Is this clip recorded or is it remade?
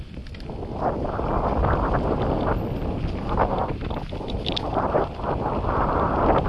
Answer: recorded